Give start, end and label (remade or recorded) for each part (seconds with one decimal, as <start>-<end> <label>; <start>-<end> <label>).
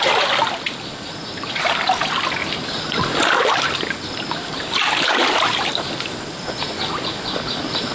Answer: 0.0-4.4 recorded; 4.4-5.7 remade; 5.7-7.9 recorded